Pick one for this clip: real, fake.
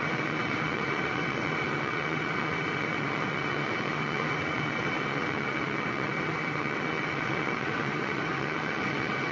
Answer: fake